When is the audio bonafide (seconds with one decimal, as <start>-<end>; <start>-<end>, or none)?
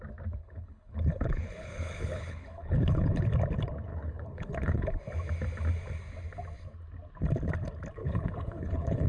0.0-0.4; 3.2-3.9; 5.0-8.0